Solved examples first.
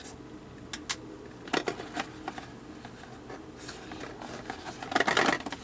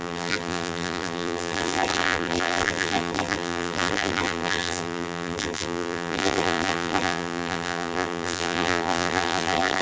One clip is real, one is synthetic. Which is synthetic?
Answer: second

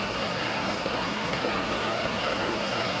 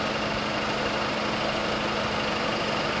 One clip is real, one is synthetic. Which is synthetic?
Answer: first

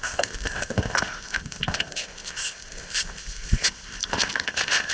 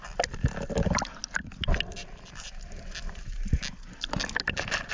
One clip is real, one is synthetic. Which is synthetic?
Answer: first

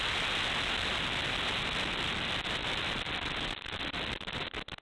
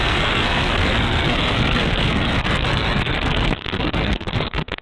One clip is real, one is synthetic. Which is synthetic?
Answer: second